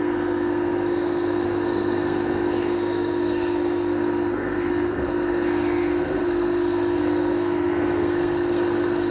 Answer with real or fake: fake